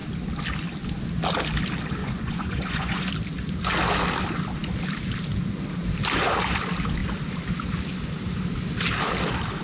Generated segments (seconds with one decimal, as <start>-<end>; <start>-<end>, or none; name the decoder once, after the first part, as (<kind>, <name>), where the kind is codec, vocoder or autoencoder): 2.0-3.1 (vocoder, Vocos)